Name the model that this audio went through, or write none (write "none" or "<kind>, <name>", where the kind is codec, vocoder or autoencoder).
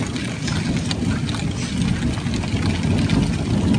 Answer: none